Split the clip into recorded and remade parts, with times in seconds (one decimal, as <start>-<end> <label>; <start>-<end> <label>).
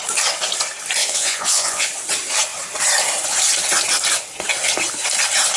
0.0-1.0 recorded; 1.0-1.9 remade; 1.9-5.6 recorded